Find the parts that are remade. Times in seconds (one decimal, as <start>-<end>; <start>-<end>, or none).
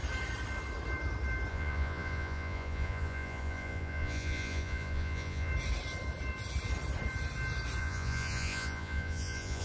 1.5-5.5; 7.8-9.6